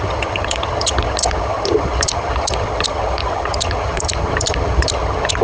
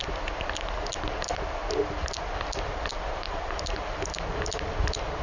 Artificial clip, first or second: first